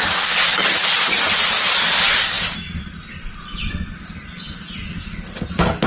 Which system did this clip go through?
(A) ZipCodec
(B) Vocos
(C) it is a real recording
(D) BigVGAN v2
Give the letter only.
C